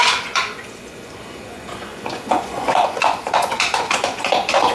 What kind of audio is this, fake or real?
fake